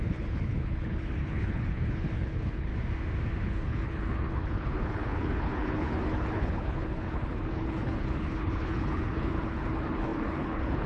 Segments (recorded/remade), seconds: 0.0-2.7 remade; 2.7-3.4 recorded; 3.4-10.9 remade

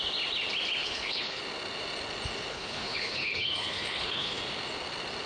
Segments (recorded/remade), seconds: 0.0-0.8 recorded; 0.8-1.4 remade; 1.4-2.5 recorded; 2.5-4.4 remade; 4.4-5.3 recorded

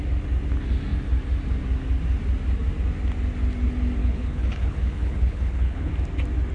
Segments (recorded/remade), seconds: 0.0-4.0 recorded; 4.0-5.9 remade; 5.9-6.5 recorded

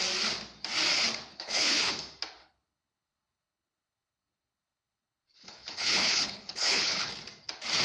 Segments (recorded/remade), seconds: 0.0-1.3 recorded; 1.3-1.9 remade; 1.9-2.4 recorded; 2.4-7.1 remade; 7.1-7.8 recorded